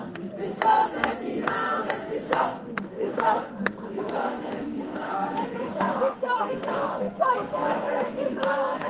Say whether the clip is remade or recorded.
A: remade